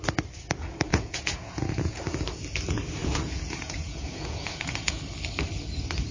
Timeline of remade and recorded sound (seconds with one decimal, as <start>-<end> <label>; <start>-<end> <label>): 0.0-0.9 recorded; 0.9-2.0 remade; 2.0-3.0 recorded; 3.0-5.0 remade; 5.0-6.1 recorded